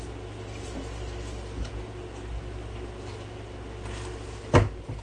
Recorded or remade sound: recorded